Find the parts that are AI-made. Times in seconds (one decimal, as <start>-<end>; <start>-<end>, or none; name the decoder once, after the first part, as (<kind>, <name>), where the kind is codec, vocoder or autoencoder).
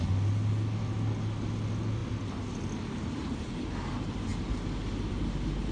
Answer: none